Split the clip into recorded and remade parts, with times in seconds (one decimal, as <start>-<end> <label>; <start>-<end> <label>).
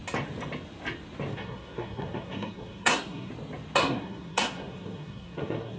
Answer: 0.0-1.3 recorded; 1.3-3.3 remade; 3.3-3.8 recorded; 3.8-5.8 remade